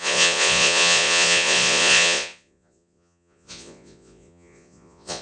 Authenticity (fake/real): fake